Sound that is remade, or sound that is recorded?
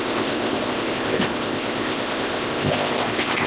remade